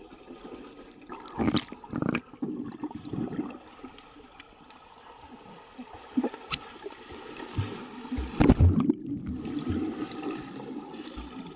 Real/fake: real